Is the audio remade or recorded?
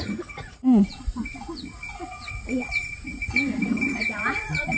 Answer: remade